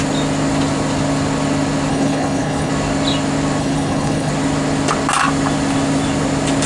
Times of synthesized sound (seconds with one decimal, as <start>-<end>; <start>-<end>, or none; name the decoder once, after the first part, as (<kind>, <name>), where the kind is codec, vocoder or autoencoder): 1.9-2.7 (codec, HILCodec); 3.6-4.3